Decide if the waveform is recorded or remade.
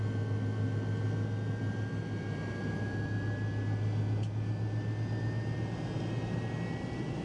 recorded